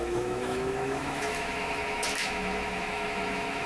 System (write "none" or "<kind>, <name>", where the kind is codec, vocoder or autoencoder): autoencoder, DAC-VAE